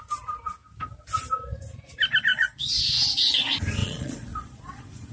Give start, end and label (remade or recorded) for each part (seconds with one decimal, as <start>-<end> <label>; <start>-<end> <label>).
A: 0.0-2.3 recorded; 2.3-2.8 remade; 2.8-3.8 recorded; 3.8-5.1 remade